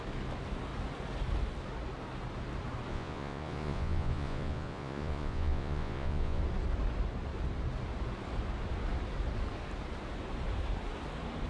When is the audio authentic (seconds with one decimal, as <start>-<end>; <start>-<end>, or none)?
0.0-2.9; 6.4-11.5